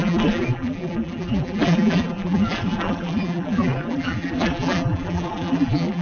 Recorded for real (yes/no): no